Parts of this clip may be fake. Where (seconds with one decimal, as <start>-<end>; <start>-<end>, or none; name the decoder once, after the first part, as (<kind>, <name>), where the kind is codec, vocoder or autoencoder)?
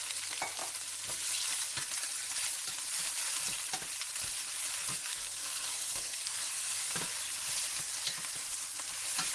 4.9-6.9 (codec, SNAC)